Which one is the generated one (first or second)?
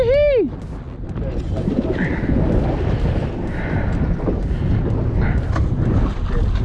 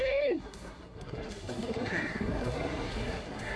second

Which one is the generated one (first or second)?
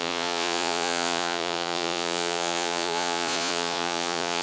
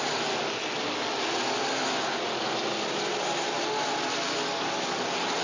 first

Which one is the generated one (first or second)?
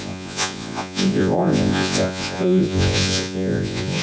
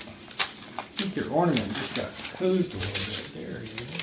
first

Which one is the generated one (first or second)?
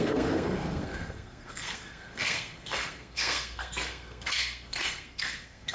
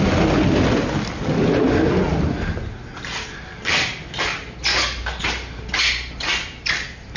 first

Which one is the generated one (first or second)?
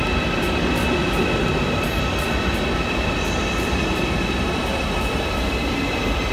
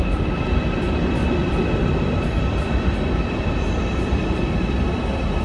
second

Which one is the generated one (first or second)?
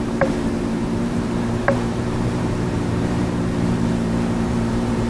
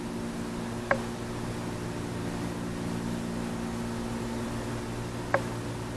first